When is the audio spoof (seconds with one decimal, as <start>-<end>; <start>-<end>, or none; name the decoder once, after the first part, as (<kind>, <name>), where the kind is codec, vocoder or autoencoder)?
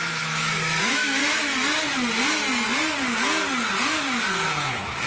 0.0-1.2 (autoencoder, DAC-VAE); 4.3-5.1